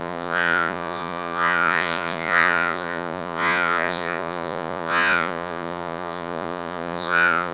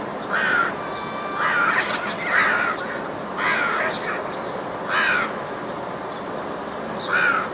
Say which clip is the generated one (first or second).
first